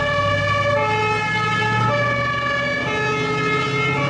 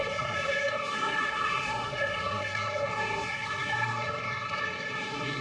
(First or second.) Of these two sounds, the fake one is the second